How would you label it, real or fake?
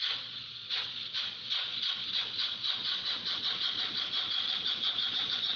fake